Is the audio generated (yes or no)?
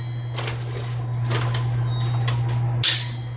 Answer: no